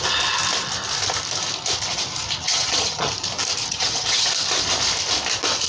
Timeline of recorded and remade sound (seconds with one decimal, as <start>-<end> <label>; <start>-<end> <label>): 0.0-2.4 recorded; 2.4-3.1 remade; 3.1-3.6 recorded; 3.6-4.3 remade; 4.3-5.7 recorded